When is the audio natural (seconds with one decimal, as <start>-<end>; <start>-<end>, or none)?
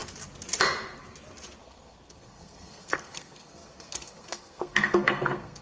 0.0-1.6